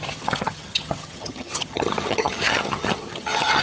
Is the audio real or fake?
fake